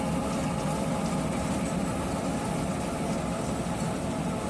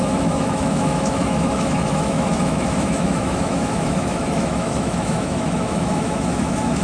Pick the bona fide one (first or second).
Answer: first